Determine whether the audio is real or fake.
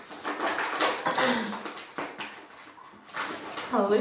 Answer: real